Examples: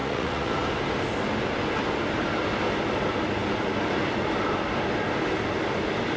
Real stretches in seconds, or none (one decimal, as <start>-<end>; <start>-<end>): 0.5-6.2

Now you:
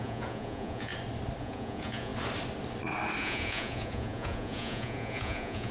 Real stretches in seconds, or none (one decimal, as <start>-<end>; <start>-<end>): 0.9-1.4; 2.1-3.2

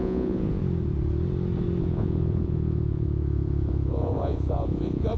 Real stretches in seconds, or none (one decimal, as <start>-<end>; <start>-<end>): 0.6-1.8

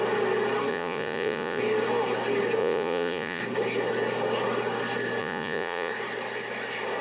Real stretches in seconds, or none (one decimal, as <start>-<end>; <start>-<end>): 0.0-0.7; 1.6-2.6; 3.4-5.2; 5.9-7.0